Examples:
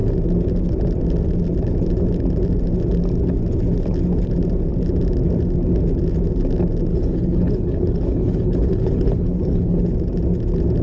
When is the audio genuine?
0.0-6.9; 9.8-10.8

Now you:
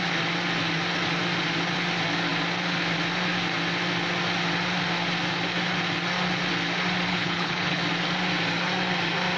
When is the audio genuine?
0.0-7.1; 7.8-9.4